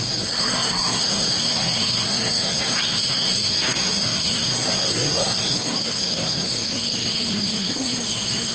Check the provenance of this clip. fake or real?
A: fake